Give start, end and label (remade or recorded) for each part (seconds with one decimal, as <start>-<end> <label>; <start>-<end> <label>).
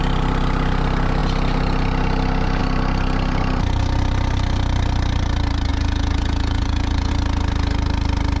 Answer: 0.0-5.7 recorded; 5.7-7.1 remade; 7.1-8.4 recorded